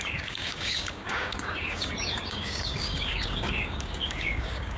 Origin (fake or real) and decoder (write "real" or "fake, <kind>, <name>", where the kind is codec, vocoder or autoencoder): fake, codec, DAC